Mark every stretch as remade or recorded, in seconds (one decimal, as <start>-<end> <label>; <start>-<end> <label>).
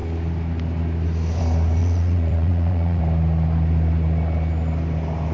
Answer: 0.0-1.8 recorded; 1.8-3.0 remade; 3.0-5.3 recorded